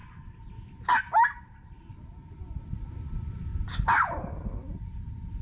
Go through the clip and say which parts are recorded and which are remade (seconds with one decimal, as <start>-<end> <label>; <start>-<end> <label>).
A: 0.0-1.0 recorded; 1.0-3.5 remade; 3.5-4.3 recorded; 4.3-5.4 remade

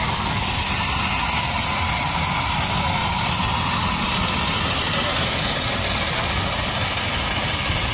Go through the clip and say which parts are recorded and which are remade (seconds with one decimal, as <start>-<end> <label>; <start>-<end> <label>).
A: 0.0-7.9 recorded